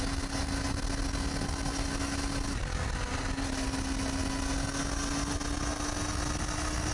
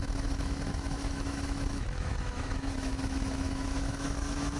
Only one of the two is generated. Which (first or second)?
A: second